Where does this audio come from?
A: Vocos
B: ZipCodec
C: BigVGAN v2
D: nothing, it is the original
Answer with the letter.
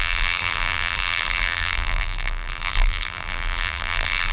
C